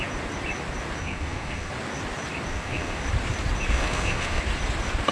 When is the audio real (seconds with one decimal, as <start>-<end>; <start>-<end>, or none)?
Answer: 0.0-1.0; 1.7-2.5; 3.0-3.7; 4.4-5.1